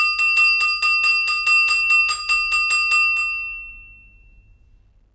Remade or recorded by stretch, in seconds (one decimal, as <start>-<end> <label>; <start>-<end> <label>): 0.0-5.1 recorded